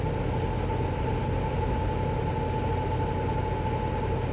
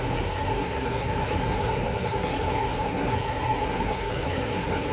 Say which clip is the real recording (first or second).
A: first